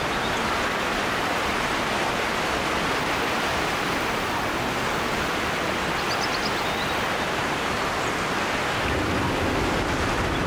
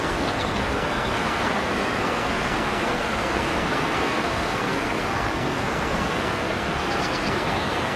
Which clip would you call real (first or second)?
first